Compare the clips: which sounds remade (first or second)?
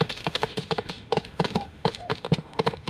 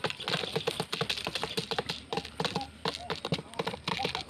first